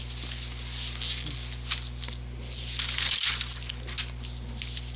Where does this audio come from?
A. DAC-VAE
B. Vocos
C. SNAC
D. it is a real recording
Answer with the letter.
D